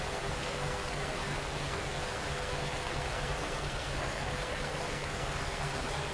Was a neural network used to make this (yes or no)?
yes